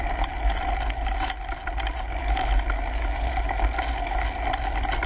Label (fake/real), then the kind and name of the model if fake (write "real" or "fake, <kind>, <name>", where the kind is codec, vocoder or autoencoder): real